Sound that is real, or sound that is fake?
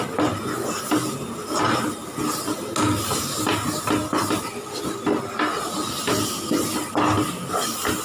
real